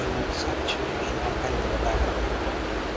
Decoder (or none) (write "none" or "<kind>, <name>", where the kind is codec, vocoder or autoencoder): none